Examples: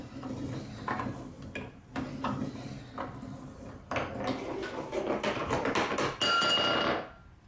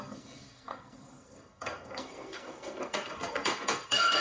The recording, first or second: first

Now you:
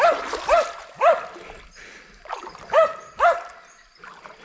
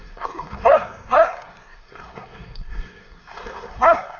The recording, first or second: first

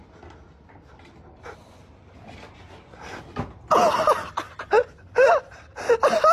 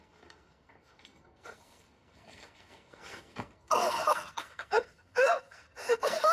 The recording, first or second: first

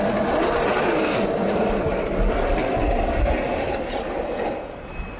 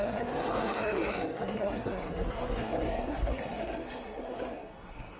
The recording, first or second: first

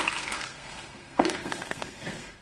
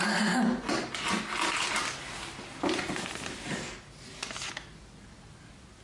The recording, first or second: second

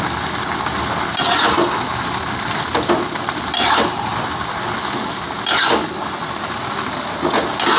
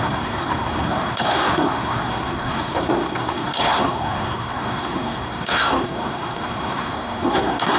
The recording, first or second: first